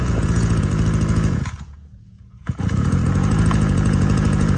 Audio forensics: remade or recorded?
remade